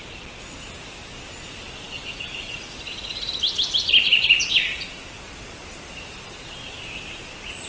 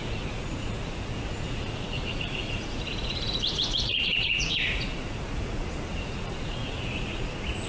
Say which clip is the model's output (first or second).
second